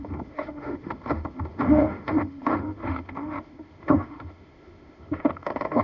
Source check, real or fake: fake